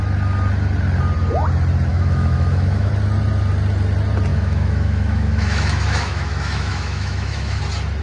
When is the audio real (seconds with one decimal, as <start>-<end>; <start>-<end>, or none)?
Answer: 0.0-1.9; 2.9-4.3; 7.6-8.0